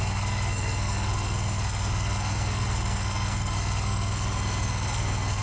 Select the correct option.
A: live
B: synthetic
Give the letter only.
B